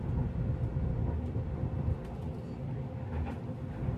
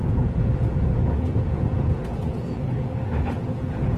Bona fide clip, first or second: first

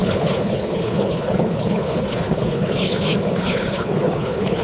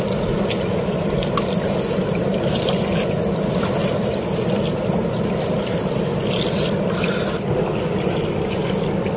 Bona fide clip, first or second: second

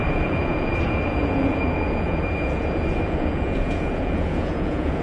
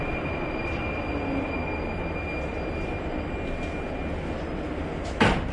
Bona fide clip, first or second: second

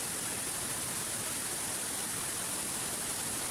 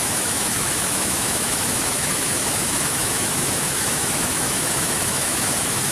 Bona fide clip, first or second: first